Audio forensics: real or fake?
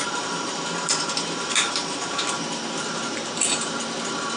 fake